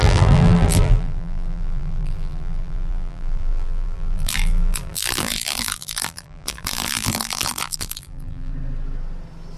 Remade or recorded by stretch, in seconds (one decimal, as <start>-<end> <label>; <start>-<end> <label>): 0.0-8.5 remade; 8.5-9.6 recorded